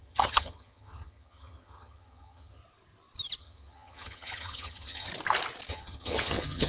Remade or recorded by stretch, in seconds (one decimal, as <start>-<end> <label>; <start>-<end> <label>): 0.0-2.6 remade; 2.6-3.4 recorded; 3.4-5.1 remade; 5.1-5.7 recorded; 5.7-6.7 remade